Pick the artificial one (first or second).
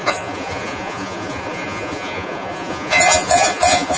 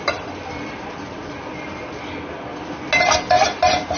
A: first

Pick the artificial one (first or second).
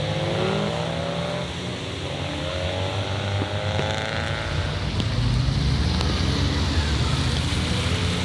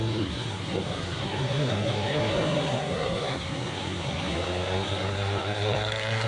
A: second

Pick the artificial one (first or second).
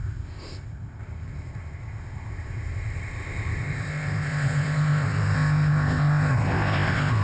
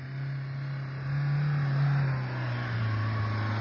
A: first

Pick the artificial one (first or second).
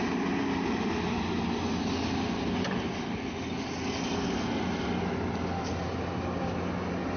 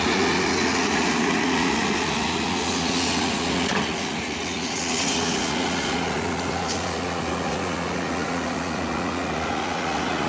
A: second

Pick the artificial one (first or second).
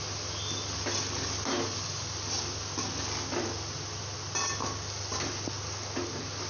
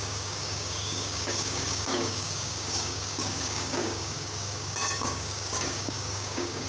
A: second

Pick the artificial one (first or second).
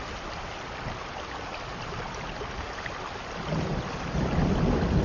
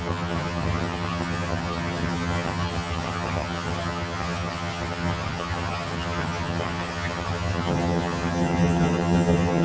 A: second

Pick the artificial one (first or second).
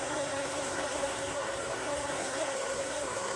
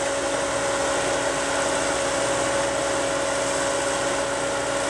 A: first